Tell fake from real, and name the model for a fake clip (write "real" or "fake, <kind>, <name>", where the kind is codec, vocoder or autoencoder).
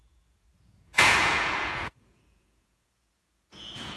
fake, vocoder, Vocos